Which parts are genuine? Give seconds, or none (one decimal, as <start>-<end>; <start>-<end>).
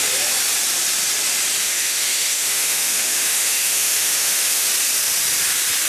0.0-1.6; 4.7-5.9